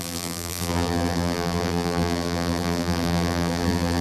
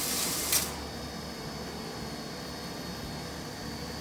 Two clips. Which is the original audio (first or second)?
second